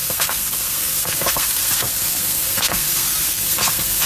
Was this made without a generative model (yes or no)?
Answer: no